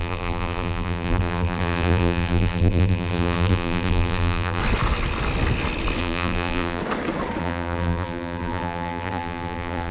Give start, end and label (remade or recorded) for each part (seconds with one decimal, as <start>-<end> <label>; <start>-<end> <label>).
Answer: 0.0-4.6 remade; 4.6-6.0 recorded; 6.0-6.8 remade; 6.8-7.4 recorded; 7.4-9.9 remade